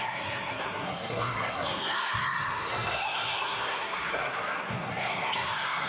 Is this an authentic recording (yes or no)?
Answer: no